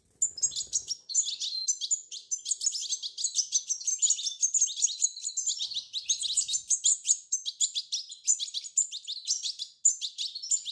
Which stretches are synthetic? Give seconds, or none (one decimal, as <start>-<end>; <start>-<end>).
none